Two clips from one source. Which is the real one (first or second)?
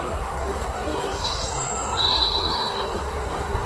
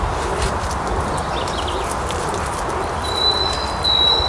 second